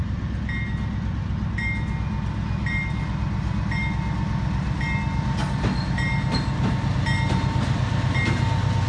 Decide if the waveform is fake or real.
real